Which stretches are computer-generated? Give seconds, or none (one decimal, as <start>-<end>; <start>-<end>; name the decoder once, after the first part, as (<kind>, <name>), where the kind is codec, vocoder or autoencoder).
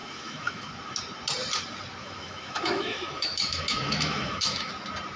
0.0-0.7 (autoencoder, DAC-VAE); 2.0-4.7